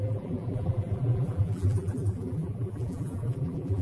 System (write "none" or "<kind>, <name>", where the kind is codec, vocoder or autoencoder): vocoder, BigVGAN v2